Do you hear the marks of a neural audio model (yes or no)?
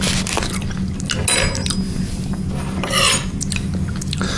no